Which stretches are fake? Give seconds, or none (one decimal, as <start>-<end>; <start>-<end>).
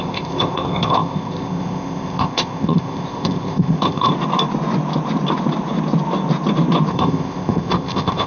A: 0.0-4.1; 6.9-8.3